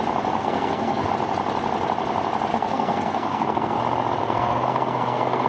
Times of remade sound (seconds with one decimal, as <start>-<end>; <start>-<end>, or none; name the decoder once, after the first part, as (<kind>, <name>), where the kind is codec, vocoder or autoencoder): 0.4-1.1 (codec, SNAC); 2.5-3.8; 4.2-5.5